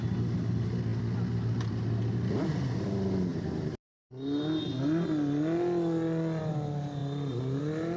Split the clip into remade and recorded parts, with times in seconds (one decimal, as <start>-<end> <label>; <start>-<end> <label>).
0.0-8.0 recorded